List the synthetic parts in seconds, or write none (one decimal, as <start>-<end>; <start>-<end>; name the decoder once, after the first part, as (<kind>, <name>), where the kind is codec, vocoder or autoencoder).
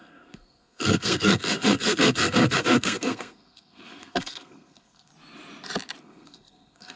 0.0-5.1 (codec, SNAC); 6.0-7.0